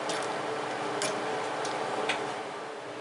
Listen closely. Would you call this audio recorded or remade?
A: recorded